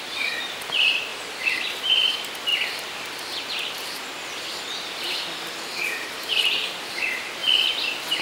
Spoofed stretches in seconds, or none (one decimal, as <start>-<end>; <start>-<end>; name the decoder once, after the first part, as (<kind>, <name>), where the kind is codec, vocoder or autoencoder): 0.0-7.4 (vocoder, BigVGAN v2)